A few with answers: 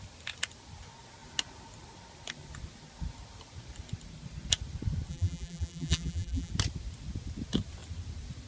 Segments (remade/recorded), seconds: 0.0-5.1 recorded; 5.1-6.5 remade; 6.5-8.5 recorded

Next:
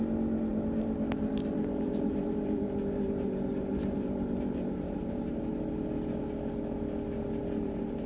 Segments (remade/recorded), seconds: 0.0-0.5 recorded; 0.5-5.4 remade; 5.4-7.4 recorded; 7.4-8.1 remade

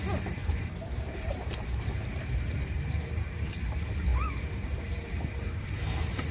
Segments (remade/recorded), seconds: 0.0-0.4 recorded; 0.4-3.5 remade; 3.5-4.1 recorded; 4.1-5.7 remade; 5.7-6.3 recorded

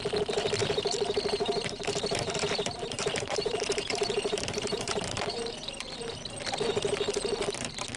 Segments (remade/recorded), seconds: 0.0-0.6 recorded; 0.6-5.2 remade; 5.2-8.0 recorded